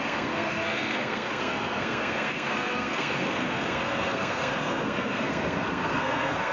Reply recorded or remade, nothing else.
remade